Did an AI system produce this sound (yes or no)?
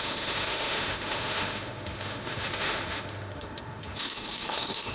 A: yes